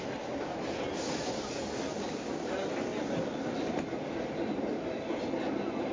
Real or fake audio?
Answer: real